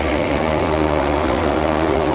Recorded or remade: remade